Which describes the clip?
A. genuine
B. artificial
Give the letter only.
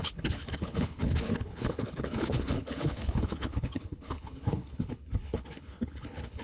B